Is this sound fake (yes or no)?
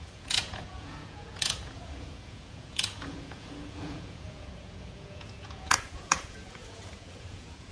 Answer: yes